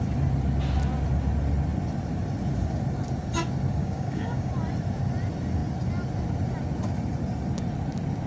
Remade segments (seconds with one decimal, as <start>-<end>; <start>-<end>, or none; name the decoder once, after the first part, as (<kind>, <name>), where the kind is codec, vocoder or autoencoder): 3.8-4.5 (codec, DAC)